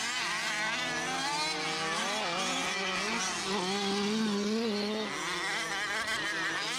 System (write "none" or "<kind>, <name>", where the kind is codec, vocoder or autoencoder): none